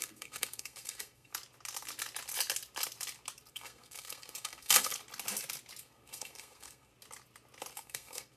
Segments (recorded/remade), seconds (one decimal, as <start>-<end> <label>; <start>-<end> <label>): 0.0-1.3 remade; 1.3-3.5 recorded; 3.5-4.9 remade; 4.9-5.8 recorded; 5.8-6.9 remade; 6.9-7.7 recorded; 7.7-8.4 remade